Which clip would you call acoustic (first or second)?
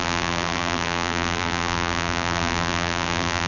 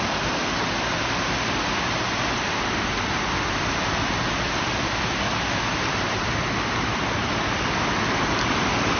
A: second